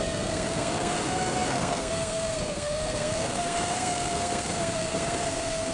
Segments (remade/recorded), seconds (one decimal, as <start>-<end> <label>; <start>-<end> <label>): 0.0-5.7 remade